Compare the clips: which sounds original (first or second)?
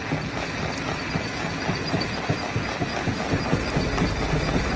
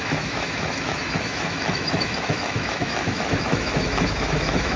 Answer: first